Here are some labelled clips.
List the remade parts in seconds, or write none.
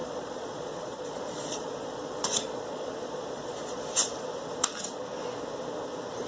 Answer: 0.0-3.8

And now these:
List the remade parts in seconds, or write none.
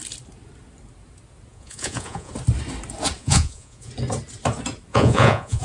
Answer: 1.5-2.3; 3.2-3.9; 4.9-5.6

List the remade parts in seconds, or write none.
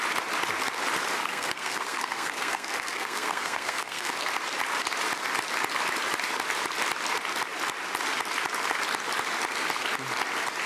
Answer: 1.2-4.1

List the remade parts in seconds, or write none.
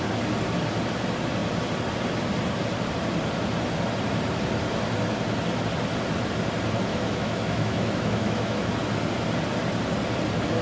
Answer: 6.9-8.7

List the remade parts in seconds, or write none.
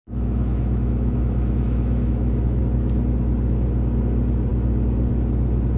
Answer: 0.0-2.6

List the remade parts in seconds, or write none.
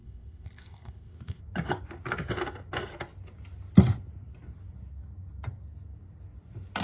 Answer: 0.0-1.4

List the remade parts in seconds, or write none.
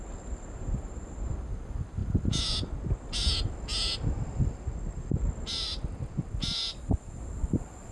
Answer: none